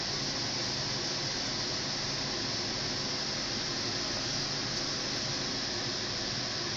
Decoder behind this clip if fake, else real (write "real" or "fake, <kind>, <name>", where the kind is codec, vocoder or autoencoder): real